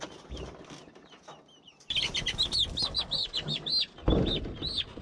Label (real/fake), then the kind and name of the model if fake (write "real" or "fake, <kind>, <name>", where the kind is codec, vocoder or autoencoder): real